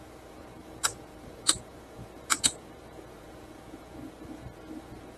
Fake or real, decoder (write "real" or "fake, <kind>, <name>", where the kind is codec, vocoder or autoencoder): fake, vocoder, Vocos